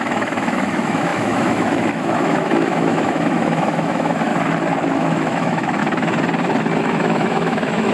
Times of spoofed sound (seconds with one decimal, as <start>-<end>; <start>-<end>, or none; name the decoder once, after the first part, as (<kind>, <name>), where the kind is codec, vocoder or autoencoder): 0.0-4.3 (autoencoder, DAC-VAE); 4.9-5.8; 6.8-7.9